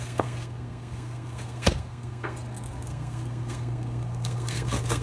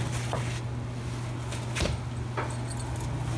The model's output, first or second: first